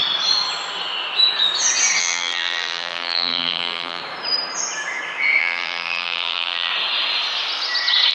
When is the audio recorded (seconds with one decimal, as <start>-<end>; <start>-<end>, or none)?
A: 0.0-2.0; 4.0-5.4; 6.7-8.1